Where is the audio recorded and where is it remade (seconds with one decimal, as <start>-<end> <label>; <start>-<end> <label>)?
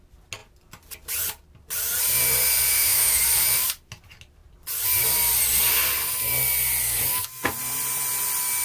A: 0.0-2.7 recorded; 2.7-3.2 remade; 3.2-8.6 recorded